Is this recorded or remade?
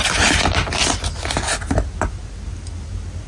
recorded